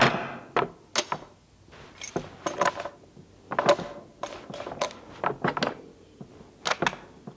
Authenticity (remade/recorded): recorded